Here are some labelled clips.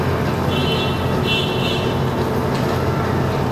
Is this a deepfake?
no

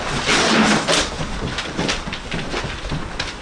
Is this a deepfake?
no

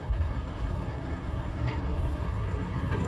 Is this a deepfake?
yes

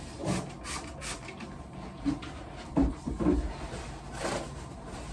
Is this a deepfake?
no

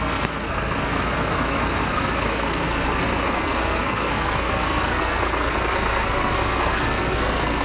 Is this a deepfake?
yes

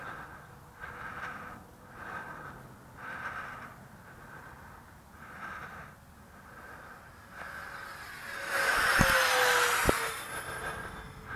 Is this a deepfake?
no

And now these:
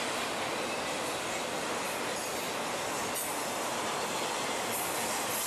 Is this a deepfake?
no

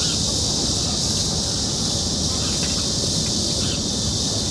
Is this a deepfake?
no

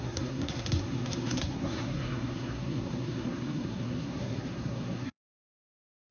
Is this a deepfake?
yes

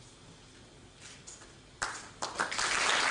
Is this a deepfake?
no